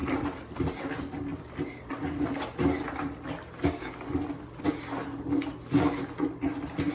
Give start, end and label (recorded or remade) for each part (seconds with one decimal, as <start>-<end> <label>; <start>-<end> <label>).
0.0-0.8 remade; 0.8-1.3 recorded; 1.3-1.9 remade; 1.9-6.9 recorded

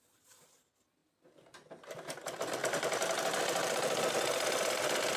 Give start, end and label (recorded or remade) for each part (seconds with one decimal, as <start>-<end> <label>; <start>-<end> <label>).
0.0-5.2 recorded

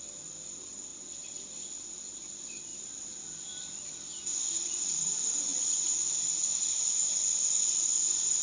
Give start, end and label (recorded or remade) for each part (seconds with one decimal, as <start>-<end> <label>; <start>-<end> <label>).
0.0-0.9 recorded; 0.9-2.3 remade; 2.3-2.7 recorded; 2.7-3.5 remade; 3.5-5.5 recorded; 5.5-6.1 remade; 6.1-8.4 recorded

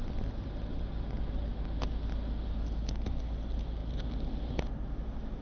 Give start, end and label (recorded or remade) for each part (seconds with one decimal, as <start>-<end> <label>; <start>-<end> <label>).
0.0-5.4 recorded

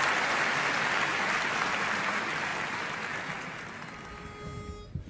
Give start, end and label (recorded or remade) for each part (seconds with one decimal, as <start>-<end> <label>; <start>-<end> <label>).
0.0-5.1 recorded

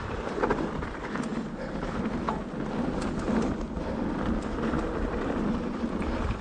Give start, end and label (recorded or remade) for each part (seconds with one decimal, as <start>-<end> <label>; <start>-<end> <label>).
0.0-1.3 remade; 1.3-3.7 recorded; 3.7-6.4 remade

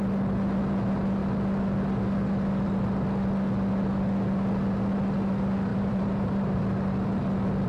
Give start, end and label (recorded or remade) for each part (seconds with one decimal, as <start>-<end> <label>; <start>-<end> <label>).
0.0-5.7 recorded; 5.7-6.6 remade; 6.6-7.7 recorded

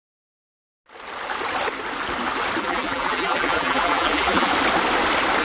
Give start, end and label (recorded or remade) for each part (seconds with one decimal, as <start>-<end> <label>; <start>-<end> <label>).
0.0-2.6 recorded; 2.6-4.5 remade; 4.5-5.4 recorded